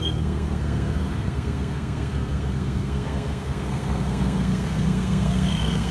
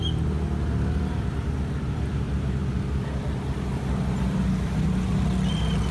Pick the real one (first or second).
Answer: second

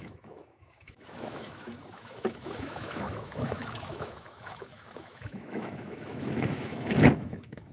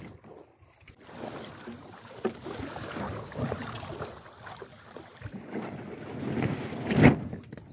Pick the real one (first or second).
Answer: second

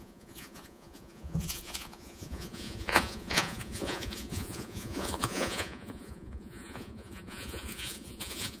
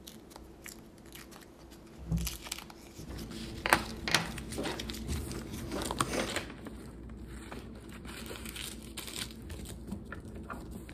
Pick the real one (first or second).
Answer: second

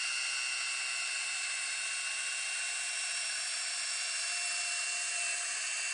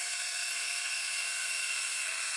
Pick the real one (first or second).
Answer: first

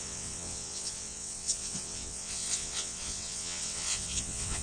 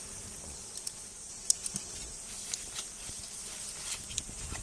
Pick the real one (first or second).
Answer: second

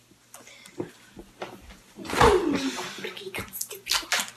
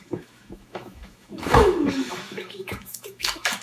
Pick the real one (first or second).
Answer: first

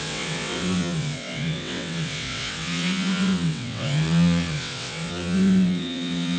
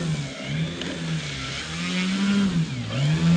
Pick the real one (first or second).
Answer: second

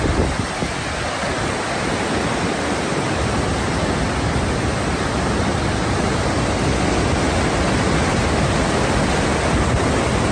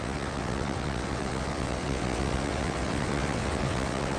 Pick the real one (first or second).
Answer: first